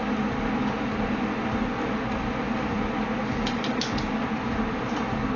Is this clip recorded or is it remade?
recorded